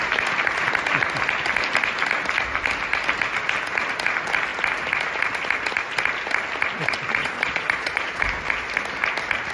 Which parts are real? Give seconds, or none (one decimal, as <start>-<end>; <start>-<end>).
0.0-7.2; 8.2-9.5